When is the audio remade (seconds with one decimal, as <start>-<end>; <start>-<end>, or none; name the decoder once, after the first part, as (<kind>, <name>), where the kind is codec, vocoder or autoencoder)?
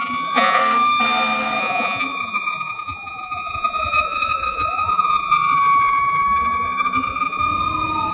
0.0-0.6 (vocoder, Vocos); 1.6-7.4